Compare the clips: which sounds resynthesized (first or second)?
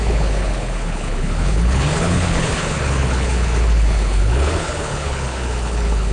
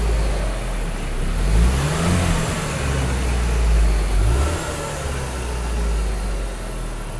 first